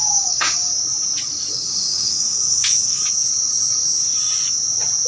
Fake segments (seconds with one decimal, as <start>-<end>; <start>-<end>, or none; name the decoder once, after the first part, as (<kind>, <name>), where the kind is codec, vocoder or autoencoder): 0.0-0.7 (codec, DAC); 1.5-3.0